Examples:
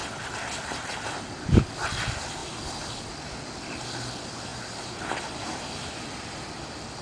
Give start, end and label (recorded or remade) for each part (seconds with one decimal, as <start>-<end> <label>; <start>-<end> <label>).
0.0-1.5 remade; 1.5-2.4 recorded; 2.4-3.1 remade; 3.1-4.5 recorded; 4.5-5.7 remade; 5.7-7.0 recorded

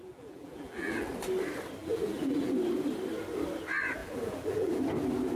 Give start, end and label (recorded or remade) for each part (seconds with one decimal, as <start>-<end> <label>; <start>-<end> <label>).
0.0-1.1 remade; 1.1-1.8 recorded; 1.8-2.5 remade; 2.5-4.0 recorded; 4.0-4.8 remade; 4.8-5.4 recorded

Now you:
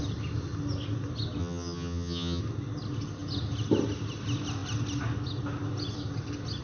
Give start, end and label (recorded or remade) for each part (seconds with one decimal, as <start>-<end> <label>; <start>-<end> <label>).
0.0-1.4 recorded; 1.4-2.4 remade; 2.4-6.6 recorded

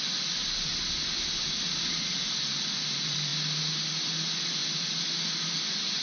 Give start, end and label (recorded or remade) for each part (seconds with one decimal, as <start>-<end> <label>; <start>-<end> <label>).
0.0-0.7 remade; 0.7-1.4 recorded; 1.4-3.3 remade; 3.3-4.0 recorded; 4.0-6.0 remade